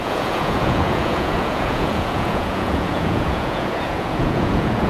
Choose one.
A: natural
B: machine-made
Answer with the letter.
B